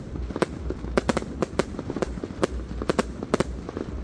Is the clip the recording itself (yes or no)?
no